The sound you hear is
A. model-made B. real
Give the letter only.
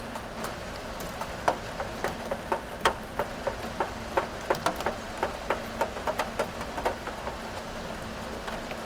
B